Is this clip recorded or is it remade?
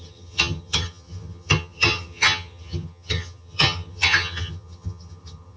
remade